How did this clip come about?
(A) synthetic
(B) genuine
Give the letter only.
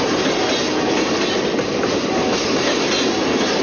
B